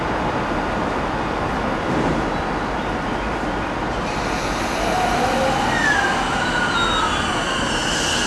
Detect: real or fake real